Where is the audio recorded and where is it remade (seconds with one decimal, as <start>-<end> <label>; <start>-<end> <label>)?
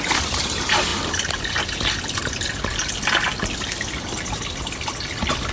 0.0-5.5 recorded